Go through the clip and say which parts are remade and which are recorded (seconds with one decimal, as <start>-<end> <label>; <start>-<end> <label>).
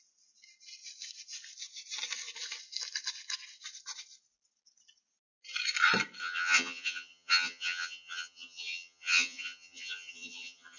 0.0-6.2 recorded; 6.2-10.8 remade